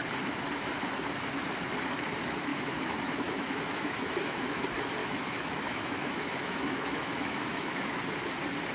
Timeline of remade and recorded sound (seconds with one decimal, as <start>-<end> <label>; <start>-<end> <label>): 0.0-2.5 recorded; 2.5-4.6 remade; 4.6-5.0 recorded; 5.0-8.0 remade; 8.0-8.7 recorded